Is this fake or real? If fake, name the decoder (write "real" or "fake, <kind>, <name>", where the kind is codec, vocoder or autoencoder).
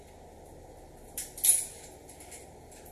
real